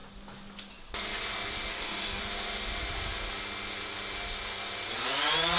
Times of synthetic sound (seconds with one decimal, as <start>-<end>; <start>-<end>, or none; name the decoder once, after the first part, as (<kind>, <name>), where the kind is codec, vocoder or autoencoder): 1.7-2.2 (codec, DAC)